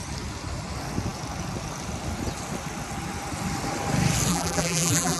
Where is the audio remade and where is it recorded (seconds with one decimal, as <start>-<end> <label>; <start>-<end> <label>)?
0.0-4.3 recorded; 4.3-5.2 remade